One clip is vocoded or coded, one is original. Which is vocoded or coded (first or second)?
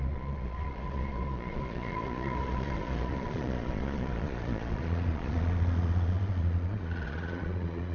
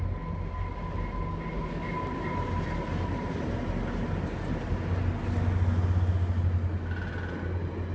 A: first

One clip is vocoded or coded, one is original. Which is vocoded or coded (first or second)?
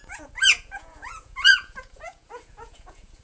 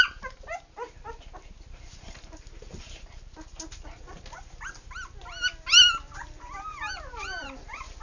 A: first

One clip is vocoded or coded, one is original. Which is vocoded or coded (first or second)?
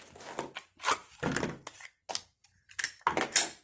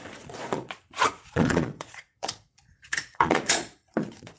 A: second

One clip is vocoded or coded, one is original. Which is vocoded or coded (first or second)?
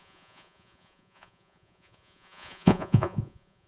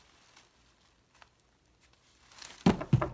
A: first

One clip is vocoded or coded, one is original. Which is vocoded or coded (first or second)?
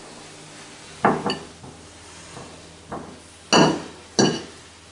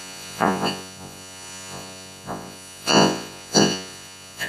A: second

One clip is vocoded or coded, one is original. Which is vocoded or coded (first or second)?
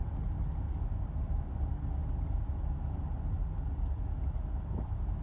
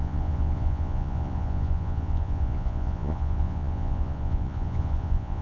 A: second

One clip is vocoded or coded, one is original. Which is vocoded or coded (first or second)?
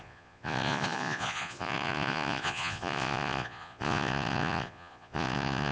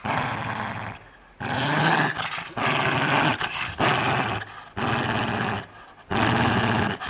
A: first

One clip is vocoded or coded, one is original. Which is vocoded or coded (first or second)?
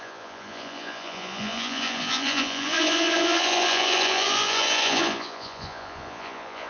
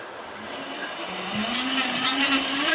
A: first